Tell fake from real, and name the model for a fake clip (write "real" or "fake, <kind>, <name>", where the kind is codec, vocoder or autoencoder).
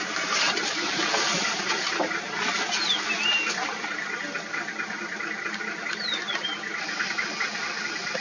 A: real